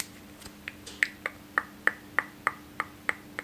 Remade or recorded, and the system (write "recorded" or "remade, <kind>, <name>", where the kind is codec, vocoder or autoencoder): recorded